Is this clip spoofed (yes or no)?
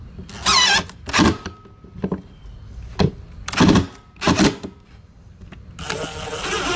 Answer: no